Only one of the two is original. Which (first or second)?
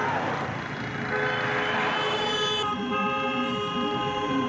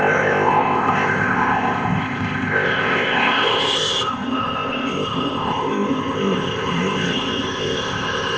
first